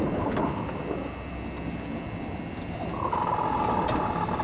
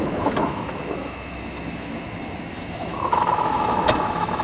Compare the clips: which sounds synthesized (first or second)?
second